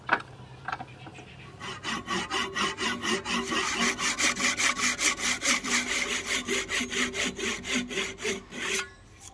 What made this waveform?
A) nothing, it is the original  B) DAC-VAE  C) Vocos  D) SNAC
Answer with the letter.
A